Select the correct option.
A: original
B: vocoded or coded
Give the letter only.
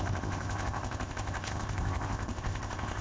B